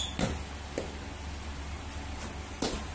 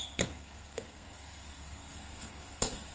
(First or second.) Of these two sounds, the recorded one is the first